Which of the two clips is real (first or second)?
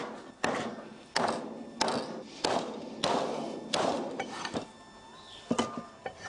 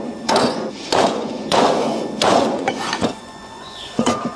first